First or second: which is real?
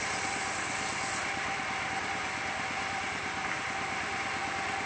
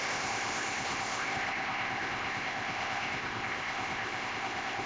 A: first